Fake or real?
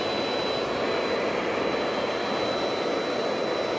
real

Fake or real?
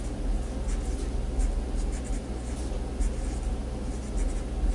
real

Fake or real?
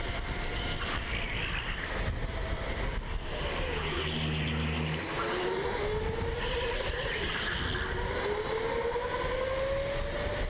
real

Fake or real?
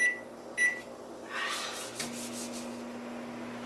real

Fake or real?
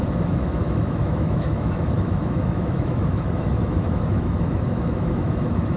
fake